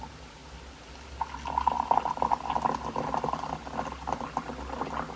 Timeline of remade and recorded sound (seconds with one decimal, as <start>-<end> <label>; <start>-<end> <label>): 0.0-5.2 recorded